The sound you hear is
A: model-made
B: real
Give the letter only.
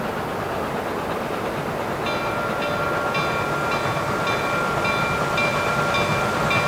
B